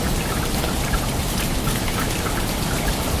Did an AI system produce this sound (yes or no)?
no